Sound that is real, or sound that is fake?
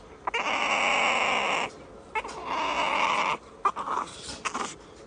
real